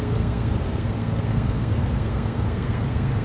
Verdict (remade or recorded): remade